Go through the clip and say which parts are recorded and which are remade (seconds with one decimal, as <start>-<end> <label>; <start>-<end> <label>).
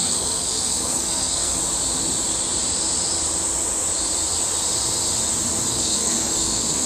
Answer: 0.0-1.6 remade; 1.6-5.7 recorded; 5.7-6.9 remade